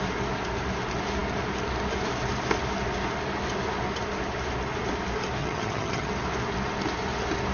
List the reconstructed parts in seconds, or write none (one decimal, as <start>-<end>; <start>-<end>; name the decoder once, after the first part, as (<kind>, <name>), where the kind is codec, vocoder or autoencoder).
5.4-6.1 (vocoder, HiFi-GAN)